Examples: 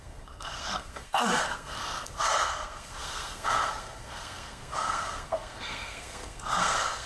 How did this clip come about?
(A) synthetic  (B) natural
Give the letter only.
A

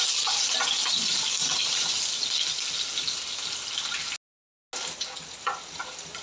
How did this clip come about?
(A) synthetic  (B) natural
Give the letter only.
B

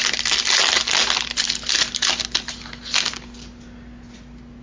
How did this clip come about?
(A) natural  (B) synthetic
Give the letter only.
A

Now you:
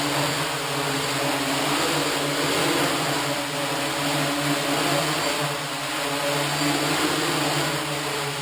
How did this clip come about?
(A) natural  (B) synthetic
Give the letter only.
A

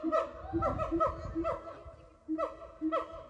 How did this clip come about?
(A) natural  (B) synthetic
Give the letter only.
A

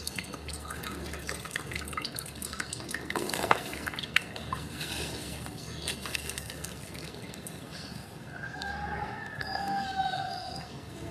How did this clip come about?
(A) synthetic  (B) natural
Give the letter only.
A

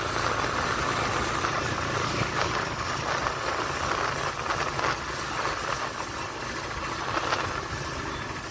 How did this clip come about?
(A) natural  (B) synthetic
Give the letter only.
A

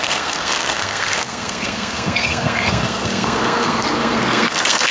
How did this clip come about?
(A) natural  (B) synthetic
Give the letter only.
B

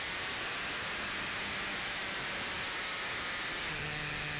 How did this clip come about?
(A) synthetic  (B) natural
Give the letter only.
B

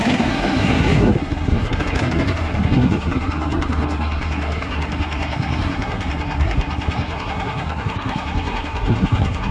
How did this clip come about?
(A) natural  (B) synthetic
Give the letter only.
B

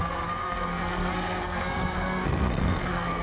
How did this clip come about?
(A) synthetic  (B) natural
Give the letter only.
A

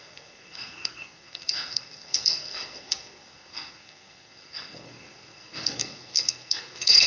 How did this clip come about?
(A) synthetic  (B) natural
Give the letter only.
A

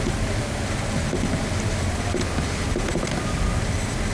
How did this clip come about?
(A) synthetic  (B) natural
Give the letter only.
B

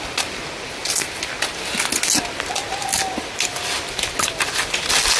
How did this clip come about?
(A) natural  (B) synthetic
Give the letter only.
A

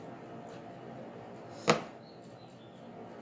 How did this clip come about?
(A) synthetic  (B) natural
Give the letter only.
B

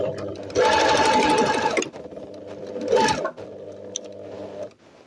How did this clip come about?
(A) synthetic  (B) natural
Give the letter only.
B